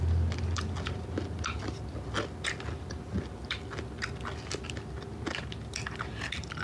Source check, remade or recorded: recorded